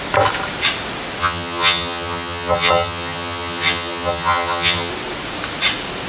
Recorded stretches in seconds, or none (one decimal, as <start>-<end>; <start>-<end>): 0.0-1.2; 4.9-6.1